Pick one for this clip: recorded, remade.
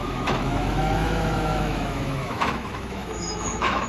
remade